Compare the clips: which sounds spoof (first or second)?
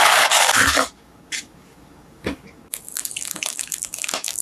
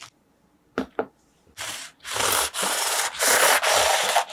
first